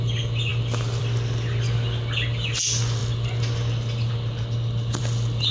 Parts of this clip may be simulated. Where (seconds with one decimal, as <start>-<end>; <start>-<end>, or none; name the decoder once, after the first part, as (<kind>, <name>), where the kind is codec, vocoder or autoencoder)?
none